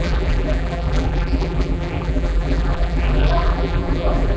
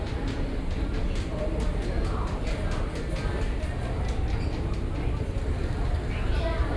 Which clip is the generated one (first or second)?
first